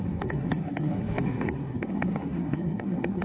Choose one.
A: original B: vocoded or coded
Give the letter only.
B